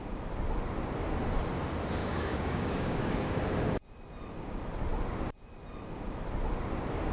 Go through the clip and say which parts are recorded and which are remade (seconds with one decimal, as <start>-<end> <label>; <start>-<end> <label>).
0.0-2.0 recorded; 2.0-3.4 remade; 3.4-7.1 recorded